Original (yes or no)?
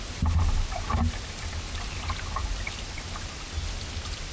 yes